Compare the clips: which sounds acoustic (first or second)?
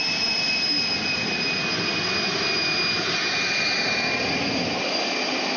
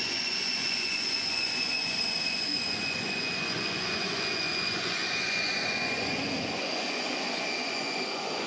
first